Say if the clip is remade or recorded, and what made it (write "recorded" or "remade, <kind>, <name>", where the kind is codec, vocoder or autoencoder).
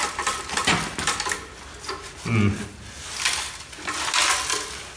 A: recorded